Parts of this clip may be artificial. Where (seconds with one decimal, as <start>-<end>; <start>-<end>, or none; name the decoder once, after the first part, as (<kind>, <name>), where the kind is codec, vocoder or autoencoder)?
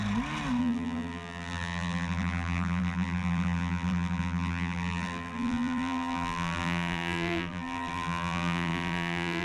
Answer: 0.6-9.4 (vocoder, BigVGAN v2)